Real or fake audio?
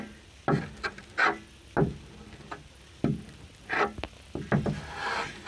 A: real